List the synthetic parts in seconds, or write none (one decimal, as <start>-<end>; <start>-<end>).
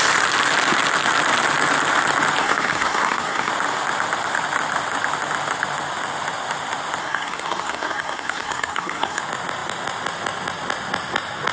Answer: 2.4-3.5; 7.0-9.2